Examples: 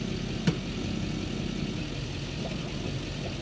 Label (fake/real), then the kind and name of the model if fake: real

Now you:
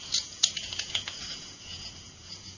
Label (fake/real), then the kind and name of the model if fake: fake, vocoder, Vocos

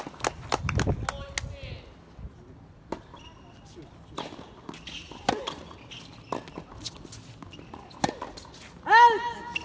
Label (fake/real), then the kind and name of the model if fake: real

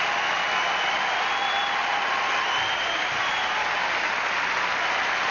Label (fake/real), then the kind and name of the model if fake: real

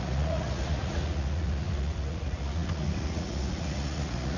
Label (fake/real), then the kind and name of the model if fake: fake, vocoder, Vocos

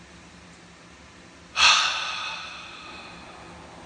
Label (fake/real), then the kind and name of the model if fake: real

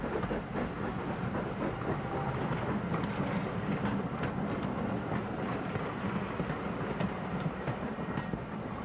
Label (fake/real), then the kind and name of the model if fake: real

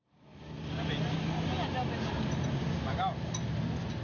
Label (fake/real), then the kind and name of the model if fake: real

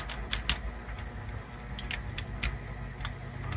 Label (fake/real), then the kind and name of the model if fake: real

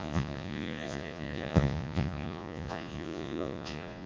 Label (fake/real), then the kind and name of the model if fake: fake, vocoder, Vocos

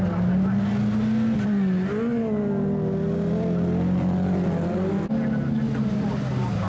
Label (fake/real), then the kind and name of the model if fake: real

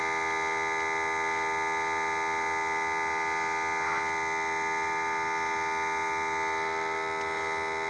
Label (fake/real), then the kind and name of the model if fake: real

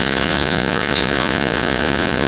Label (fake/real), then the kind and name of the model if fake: fake, vocoder, Vocos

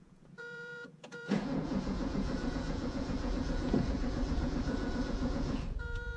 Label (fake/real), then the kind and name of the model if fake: fake, vocoder, Vocos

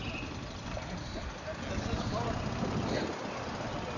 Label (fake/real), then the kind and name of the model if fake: real